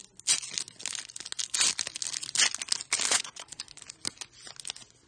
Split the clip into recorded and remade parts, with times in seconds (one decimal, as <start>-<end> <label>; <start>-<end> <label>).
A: 0.0-3.1 recorded; 3.1-3.6 remade; 3.6-5.1 recorded